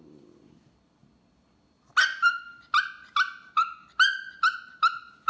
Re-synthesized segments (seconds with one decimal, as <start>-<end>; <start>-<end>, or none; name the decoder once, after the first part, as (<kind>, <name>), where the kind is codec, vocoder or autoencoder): none

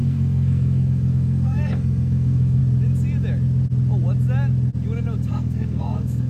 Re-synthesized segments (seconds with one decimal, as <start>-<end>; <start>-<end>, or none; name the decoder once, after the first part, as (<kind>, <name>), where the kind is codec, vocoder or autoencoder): 0.0-2.6 (codec, SNAC); 5.3-6.3

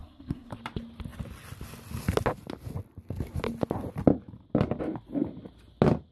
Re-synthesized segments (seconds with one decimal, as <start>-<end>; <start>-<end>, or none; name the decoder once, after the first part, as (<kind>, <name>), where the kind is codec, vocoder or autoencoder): 0.0-0.5 (codec, SNAC)

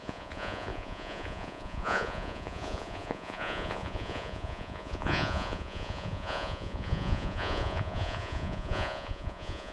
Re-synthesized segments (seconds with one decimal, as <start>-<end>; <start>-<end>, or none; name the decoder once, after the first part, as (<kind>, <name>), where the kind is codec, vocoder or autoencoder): 0.0-9.7 (vocoder, Vocos)